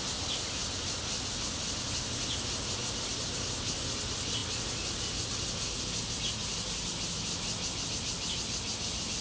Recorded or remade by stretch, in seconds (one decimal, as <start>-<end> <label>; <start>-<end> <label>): 0.0-9.2 recorded